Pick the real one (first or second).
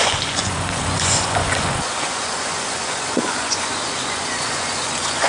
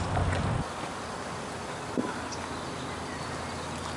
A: second